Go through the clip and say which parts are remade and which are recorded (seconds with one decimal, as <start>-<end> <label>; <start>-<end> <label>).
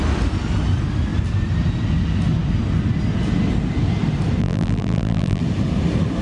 0.0-4.4 recorded; 4.4-5.4 remade; 5.4-6.2 recorded